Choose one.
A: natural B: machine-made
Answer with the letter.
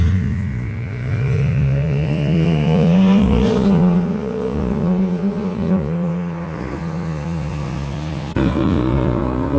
B